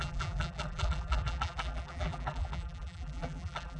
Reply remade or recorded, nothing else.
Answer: remade